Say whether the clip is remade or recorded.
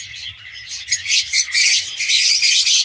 remade